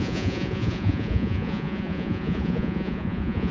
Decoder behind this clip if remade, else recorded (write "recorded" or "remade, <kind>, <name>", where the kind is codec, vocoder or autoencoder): remade, vocoder, Vocos